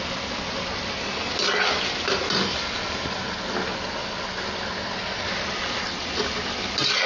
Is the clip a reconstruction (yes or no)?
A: no